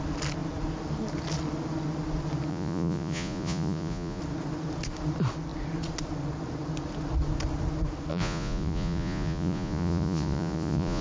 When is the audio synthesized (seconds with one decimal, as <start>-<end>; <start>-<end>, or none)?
2.5-4.2; 8.1-11.0